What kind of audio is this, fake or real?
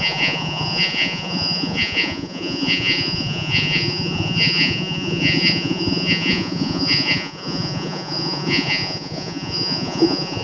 fake